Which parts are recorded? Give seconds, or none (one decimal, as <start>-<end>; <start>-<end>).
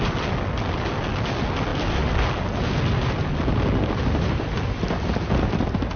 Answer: 0.0-6.0